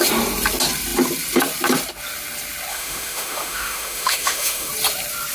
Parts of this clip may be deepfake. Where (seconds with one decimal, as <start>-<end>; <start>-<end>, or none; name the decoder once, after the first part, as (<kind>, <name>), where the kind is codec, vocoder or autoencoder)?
2.7-4.7 (autoencoder, DAC-VAE)